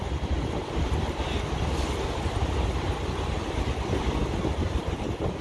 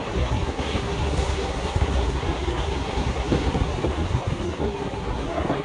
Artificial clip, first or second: second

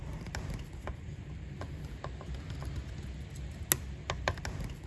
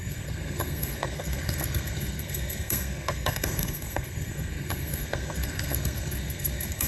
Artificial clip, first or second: second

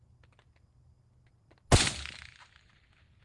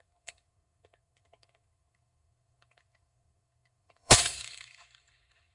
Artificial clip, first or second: second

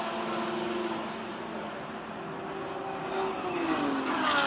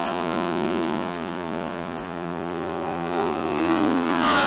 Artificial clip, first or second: second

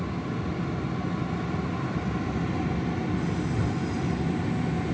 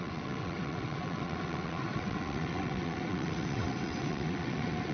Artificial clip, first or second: second